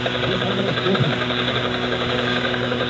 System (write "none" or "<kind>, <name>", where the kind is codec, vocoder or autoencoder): codec, DAC